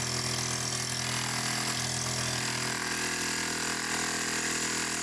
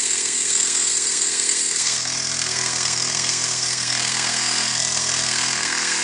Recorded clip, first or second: first